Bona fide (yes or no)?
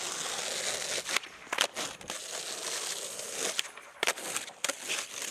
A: yes